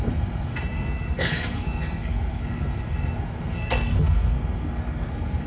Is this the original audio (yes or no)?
no